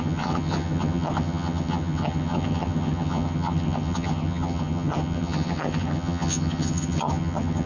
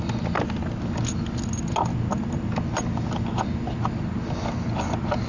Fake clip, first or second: first